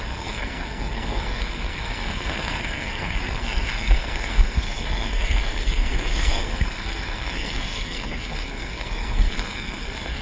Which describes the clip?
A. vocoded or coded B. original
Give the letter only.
A